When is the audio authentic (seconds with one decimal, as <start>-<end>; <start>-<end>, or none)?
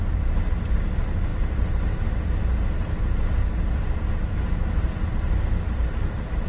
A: 0.0-6.5